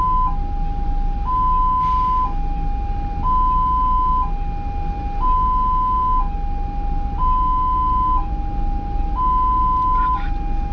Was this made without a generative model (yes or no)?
yes